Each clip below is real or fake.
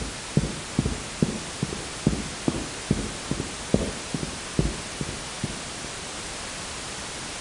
real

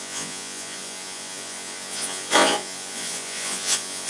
fake